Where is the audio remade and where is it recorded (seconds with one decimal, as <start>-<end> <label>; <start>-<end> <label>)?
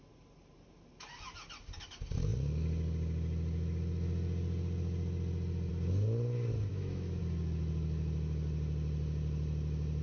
0.0-6.7 recorded; 6.7-7.2 remade; 7.2-10.0 recorded